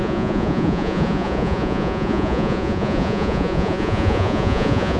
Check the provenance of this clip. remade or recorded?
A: remade